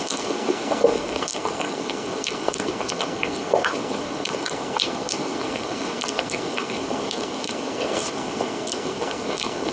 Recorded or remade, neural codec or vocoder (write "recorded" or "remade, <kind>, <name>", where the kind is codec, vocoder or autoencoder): remade, codec, SNAC